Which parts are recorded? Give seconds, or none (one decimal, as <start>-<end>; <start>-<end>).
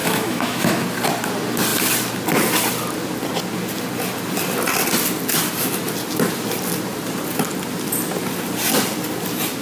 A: 0.8-9.6